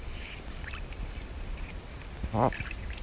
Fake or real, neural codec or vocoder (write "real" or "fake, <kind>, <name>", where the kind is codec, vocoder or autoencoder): real